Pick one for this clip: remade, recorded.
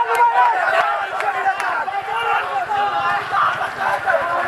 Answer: recorded